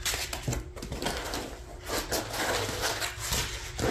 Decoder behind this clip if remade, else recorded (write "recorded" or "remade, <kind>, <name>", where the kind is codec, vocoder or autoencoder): recorded